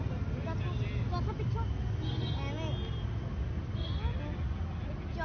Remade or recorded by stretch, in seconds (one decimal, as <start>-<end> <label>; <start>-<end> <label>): 0.0-5.2 recorded